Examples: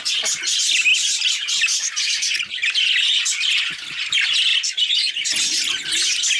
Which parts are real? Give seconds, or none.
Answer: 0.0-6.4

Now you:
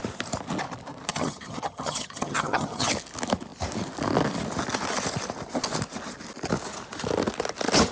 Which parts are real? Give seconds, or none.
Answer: 0.0-1.1; 2.9-7.9

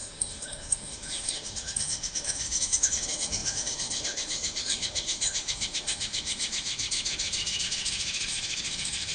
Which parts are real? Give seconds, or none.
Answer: none

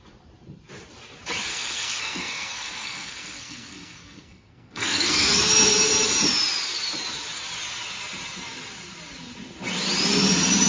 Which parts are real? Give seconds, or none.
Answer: 0.0-1.5; 5.4-10.7

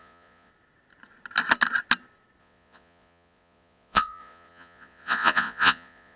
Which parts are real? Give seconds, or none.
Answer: 0.5-2.4

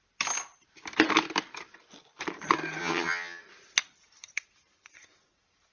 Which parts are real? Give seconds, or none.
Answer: 0.0-2.8; 3.4-5.7

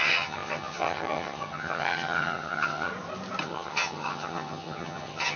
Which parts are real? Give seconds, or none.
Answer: 2.9-3.4